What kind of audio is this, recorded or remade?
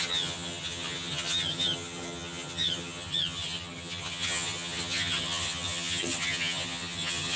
remade